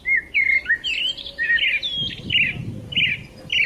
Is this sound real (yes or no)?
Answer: yes